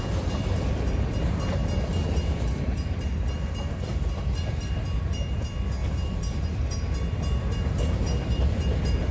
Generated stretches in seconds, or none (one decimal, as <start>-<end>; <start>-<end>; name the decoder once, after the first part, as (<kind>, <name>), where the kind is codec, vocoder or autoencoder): 0.0-1.6 (vocoder, BigVGAN v2); 2.1-9.1